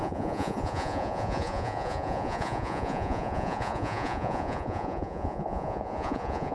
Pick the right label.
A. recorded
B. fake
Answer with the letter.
B